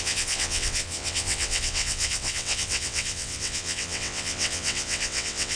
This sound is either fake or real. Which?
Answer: fake